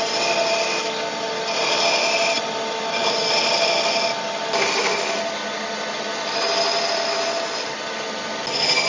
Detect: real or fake real